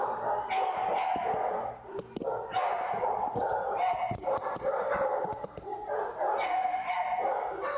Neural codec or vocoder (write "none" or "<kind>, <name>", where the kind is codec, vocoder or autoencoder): none